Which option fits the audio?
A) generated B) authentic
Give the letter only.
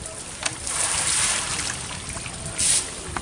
B